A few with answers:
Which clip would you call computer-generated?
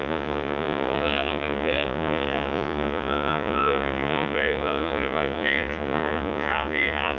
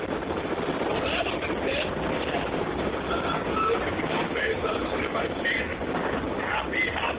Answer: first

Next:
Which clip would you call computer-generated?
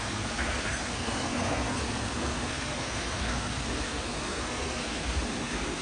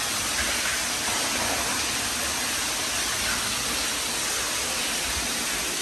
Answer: first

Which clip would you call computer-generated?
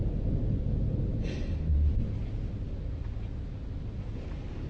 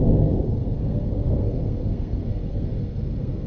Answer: second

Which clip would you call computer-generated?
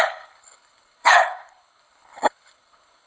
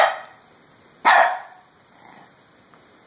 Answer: first